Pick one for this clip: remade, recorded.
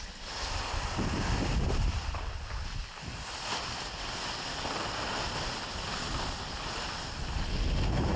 recorded